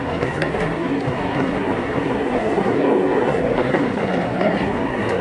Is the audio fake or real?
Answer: fake